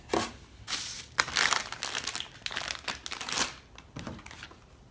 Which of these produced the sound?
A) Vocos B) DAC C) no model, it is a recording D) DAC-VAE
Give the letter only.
C